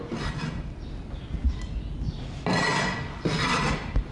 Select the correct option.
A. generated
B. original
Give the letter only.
B